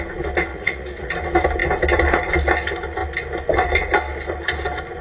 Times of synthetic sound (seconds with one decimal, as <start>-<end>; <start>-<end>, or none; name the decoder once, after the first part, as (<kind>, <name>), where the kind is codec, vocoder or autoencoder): 0.5-1.1 (vocoder, Vocos)